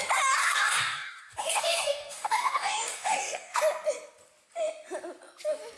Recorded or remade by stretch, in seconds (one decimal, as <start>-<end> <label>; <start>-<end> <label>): 0.0-0.4 recorded; 0.4-3.6 remade; 3.6-5.8 recorded